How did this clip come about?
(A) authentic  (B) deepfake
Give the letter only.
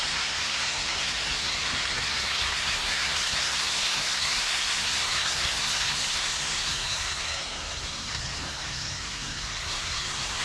B